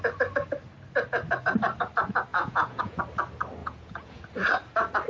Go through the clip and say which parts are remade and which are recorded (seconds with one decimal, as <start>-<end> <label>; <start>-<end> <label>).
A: 0.0-2.3 recorded; 2.3-3.0 remade; 3.0-3.6 recorded; 3.6-4.2 remade; 4.2-5.1 recorded